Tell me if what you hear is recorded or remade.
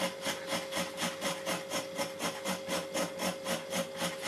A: recorded